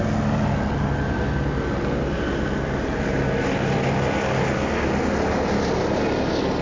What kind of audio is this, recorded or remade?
recorded